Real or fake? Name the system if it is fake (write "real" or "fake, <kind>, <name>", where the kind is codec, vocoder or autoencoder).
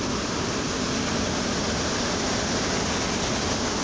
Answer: real